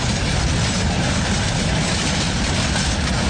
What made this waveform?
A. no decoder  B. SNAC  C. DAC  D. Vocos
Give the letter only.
A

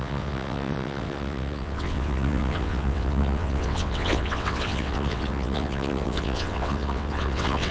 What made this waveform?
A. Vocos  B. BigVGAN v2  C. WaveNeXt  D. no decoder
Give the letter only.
C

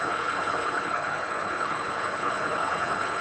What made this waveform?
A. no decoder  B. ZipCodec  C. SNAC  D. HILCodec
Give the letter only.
D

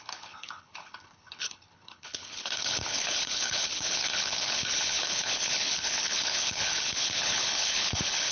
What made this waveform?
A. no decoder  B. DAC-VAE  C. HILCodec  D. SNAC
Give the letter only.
C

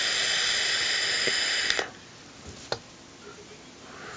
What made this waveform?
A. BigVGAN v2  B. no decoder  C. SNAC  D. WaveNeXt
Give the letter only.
B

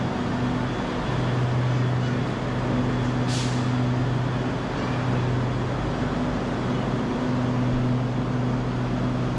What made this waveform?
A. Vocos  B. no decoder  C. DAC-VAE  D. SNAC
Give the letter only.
B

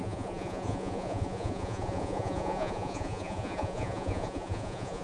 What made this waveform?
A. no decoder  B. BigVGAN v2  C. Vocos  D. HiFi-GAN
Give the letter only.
C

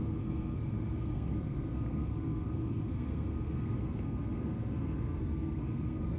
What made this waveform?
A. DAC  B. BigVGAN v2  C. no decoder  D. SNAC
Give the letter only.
D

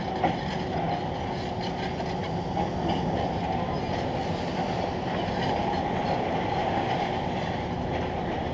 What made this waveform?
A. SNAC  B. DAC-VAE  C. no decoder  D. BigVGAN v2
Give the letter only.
C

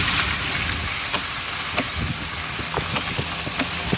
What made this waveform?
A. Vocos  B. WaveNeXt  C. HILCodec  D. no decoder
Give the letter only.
D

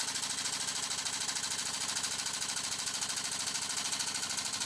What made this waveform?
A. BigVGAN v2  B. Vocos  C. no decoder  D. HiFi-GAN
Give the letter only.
C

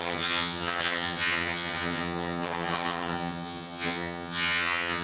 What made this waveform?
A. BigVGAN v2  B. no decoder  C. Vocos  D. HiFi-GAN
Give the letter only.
D